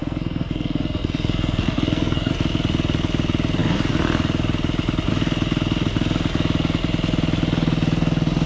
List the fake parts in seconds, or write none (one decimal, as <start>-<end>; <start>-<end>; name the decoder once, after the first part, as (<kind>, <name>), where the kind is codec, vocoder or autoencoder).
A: 0.0-2.3 (codec, SNAC)